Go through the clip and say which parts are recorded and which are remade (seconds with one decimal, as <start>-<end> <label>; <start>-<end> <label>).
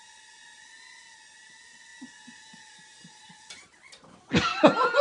0.0-5.0 recorded